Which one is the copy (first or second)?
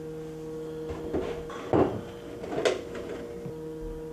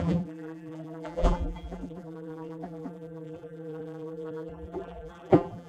second